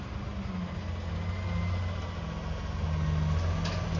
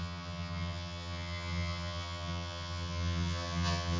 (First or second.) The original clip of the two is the first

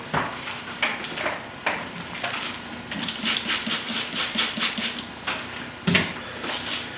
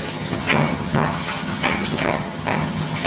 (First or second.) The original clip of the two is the first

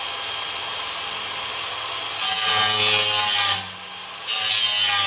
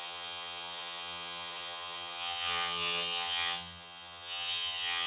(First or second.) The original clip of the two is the first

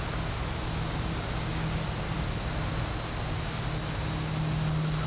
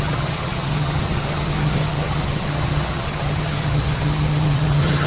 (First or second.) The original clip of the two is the first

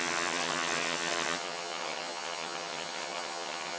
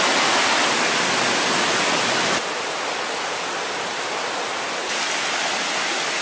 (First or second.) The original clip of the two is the second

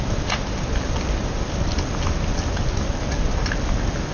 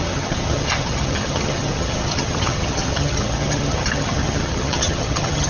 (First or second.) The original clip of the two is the first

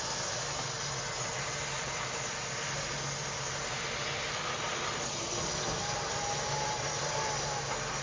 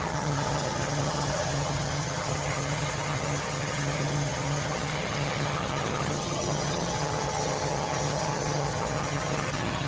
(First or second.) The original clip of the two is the first